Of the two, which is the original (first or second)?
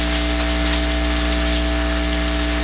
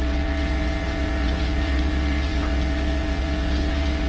first